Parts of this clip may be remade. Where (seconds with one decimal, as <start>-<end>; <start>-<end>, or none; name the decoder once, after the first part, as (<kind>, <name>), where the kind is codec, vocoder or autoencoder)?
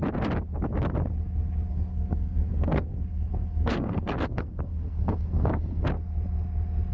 1.7-5.8 (codec, SNAC)